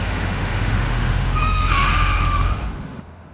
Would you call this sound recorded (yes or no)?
no